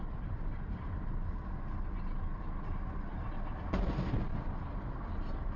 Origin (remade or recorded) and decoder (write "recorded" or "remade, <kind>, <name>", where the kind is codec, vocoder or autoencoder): recorded